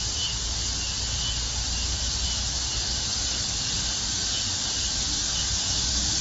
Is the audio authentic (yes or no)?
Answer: yes